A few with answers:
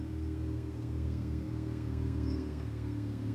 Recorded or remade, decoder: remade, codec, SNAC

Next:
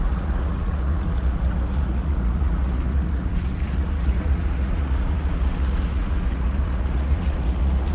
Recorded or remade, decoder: remade, vocoder, Vocos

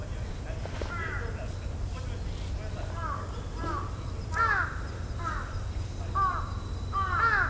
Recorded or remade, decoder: recorded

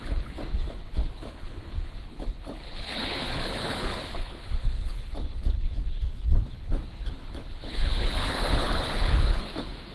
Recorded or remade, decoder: remade, codec, HILCodec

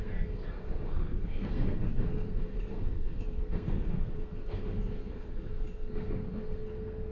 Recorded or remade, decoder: remade, codec, SNAC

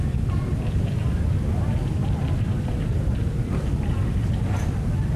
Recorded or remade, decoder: recorded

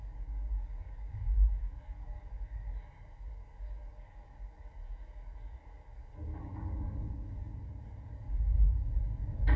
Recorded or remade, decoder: remade, codec, DAC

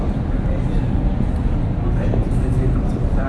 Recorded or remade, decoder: recorded